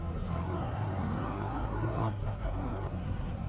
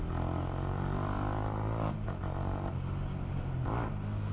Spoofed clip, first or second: first